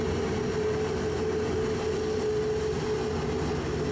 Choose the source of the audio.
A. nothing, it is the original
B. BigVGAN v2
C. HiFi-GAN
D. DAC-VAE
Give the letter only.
A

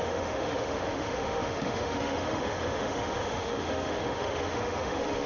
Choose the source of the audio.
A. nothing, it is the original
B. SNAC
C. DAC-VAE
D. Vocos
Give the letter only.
C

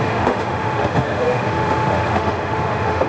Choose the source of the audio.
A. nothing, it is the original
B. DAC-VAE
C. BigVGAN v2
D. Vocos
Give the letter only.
B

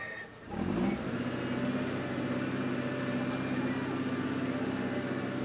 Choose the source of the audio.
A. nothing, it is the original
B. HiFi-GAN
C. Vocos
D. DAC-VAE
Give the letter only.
A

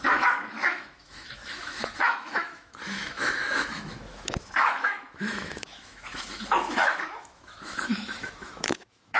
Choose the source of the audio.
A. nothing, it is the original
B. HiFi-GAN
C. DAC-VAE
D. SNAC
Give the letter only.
C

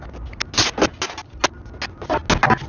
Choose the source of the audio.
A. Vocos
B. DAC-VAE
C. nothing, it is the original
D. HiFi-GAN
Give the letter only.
C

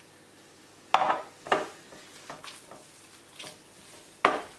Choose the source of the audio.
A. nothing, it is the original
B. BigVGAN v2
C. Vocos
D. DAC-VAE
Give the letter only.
A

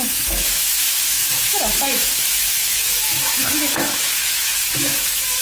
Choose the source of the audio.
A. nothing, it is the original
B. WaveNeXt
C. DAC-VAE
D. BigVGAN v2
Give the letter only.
C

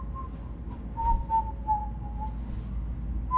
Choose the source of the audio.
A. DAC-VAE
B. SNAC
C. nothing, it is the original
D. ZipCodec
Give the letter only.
C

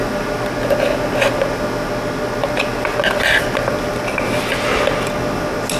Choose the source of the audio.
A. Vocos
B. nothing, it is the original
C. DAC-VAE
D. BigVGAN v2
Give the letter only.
B